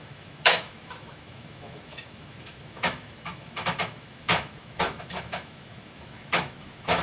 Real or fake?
fake